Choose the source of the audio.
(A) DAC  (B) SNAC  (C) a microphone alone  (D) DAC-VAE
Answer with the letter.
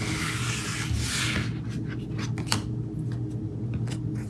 C